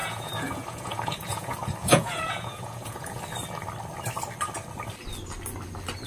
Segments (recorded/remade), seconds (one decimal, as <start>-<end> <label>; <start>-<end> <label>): 0.0-3.2 remade; 3.2-6.1 recorded